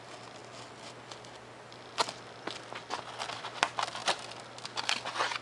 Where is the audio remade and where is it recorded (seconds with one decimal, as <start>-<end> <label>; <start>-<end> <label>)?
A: 0.0-5.4 recorded

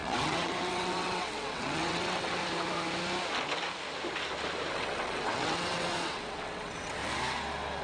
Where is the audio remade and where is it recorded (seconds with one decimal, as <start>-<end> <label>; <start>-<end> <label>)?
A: 0.0-2.4 remade; 2.4-4.7 recorded; 4.7-7.0 remade; 7.0-7.8 recorded